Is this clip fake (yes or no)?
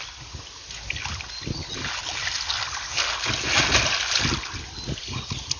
no